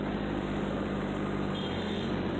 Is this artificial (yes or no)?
yes